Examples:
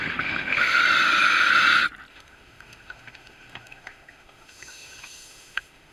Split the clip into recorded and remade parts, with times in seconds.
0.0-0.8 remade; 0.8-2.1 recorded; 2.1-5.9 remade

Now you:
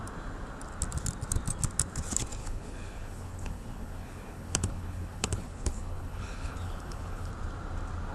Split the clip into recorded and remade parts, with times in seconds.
0.0-2.4 recorded; 2.4-7.3 remade; 7.3-8.1 recorded

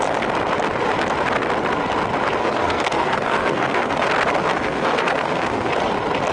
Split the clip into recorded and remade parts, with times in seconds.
0.0-2.4 recorded; 2.4-4.1 remade; 4.1-4.5 recorded; 4.5-5.7 remade; 5.7-6.3 recorded

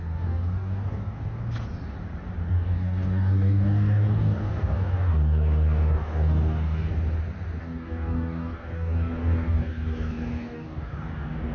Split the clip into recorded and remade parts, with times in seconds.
0.0-1.4 remade; 1.4-2.5 recorded; 2.5-6.9 remade; 6.9-7.6 recorded; 7.6-11.5 remade

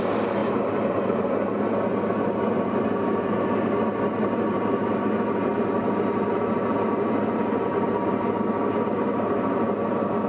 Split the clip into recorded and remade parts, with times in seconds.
0.0-0.4 recorded; 0.4-1.6 remade; 1.6-10.3 recorded

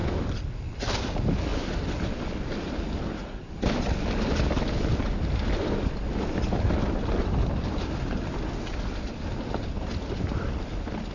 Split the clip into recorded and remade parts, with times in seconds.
0.0-11.1 recorded